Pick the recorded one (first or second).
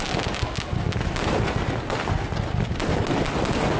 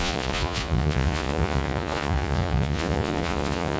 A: first